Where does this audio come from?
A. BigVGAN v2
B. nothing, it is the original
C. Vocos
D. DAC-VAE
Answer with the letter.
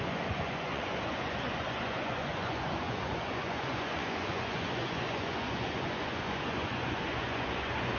C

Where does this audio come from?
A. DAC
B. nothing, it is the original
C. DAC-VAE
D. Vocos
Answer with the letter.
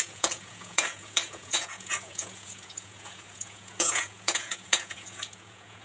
D